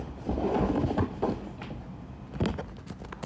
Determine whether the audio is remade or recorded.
recorded